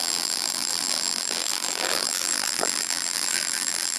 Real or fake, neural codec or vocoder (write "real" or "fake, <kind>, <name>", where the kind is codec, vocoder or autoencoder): fake, vocoder, BigVGAN v2